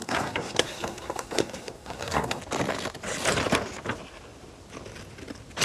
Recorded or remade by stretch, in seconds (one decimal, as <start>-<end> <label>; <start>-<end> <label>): 0.0-2.4 remade; 2.4-5.6 recorded